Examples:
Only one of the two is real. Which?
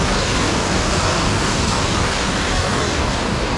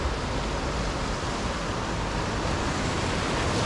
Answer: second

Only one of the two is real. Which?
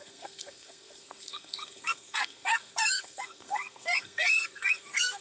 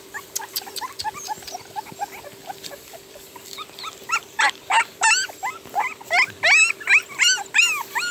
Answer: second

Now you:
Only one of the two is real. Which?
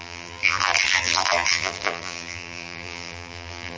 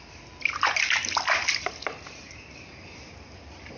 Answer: second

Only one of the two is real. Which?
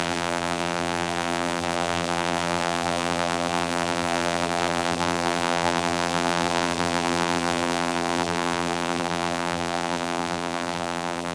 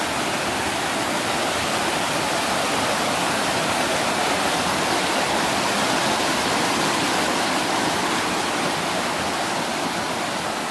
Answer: second